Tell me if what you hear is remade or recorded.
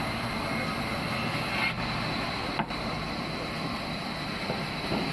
recorded